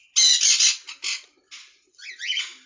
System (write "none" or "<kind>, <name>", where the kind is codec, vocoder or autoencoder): none